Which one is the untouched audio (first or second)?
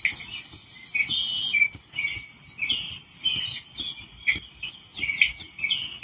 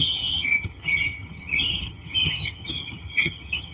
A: first